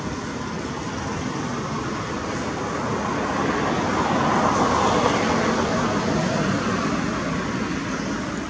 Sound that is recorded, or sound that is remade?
recorded